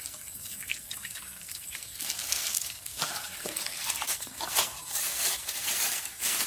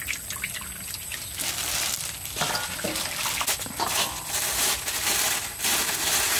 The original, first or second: second